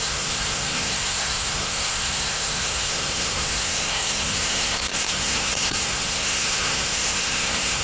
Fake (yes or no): yes